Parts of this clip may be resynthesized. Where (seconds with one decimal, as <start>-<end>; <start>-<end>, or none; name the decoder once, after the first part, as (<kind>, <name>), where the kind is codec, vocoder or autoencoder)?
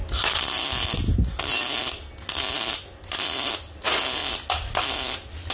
none